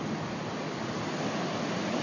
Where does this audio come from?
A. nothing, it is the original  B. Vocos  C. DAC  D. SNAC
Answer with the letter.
A